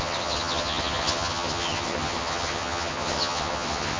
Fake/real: fake